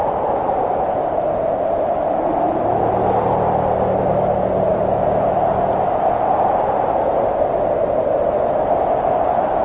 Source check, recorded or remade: recorded